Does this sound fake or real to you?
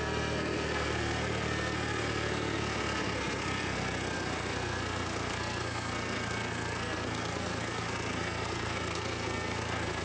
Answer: fake